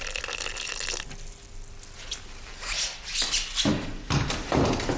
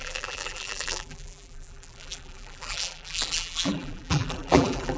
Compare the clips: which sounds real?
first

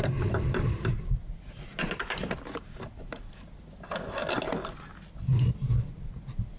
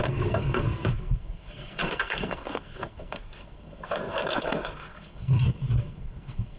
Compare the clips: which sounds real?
first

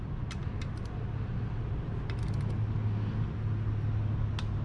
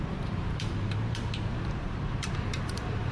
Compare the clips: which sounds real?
first